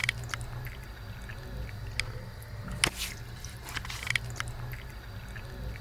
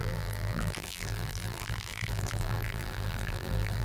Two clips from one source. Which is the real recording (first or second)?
first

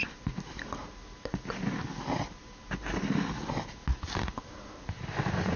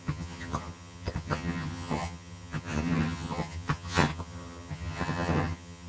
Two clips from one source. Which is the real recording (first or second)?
first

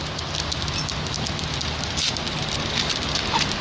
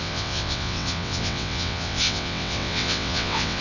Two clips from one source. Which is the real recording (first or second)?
first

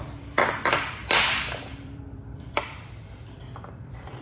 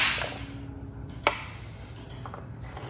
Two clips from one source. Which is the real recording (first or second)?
second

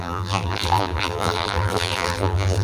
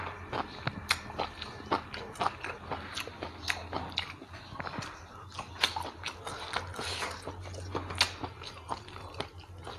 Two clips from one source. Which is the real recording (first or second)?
second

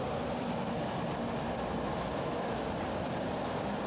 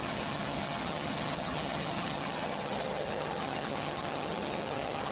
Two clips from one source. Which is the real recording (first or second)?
first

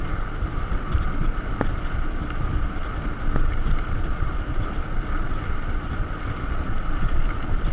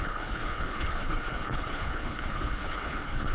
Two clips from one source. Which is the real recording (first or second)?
first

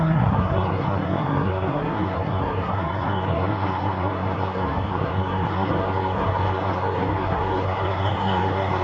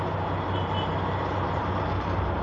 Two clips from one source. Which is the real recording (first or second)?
second